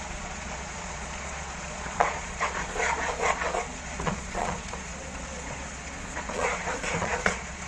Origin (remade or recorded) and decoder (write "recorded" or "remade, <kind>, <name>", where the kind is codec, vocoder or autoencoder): remade, vocoder, Vocos